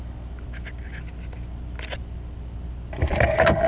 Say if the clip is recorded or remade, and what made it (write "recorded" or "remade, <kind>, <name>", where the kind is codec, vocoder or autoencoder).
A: recorded